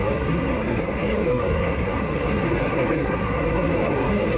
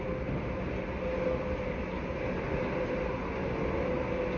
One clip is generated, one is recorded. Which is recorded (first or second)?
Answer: second